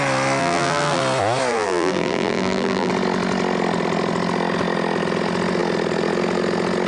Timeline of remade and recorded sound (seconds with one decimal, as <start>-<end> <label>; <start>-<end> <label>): 0.0-0.4 recorded; 0.4-1.0 remade; 1.0-1.5 recorded; 1.5-2.9 remade; 2.9-6.9 recorded